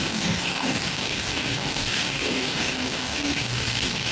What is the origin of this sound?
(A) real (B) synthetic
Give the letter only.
B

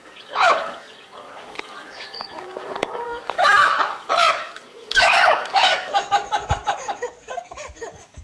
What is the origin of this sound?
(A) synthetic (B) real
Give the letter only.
A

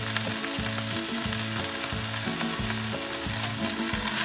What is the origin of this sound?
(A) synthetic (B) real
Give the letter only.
B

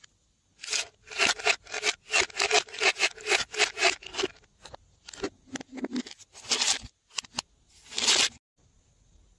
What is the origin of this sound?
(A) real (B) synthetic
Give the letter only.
A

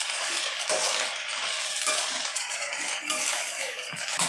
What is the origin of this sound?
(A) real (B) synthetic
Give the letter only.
B